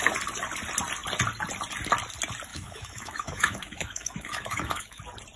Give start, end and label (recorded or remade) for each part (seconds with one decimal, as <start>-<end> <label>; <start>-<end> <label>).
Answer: 0.0-2.5 recorded; 2.5-5.0 remade; 5.0-5.4 recorded